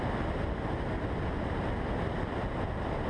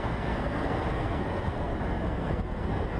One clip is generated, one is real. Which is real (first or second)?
first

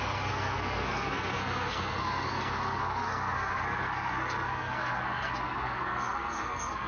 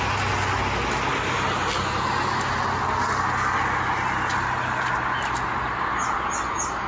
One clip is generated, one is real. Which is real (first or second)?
second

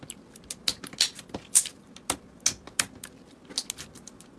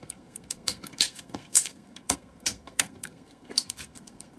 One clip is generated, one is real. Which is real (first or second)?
first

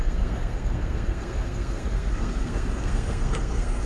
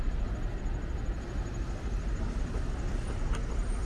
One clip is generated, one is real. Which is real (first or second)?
second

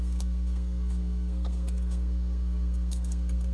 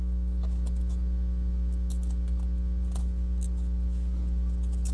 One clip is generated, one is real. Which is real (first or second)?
second